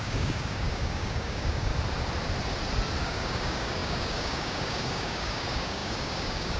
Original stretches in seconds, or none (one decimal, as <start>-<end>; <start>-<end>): 1.7-3.0